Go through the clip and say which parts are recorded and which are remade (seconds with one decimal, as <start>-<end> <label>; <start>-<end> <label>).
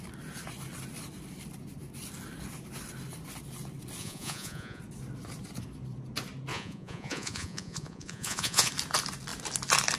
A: 0.0-4.0 recorded; 4.0-4.8 remade; 4.8-6.5 recorded; 6.5-8.7 remade; 8.7-10.0 recorded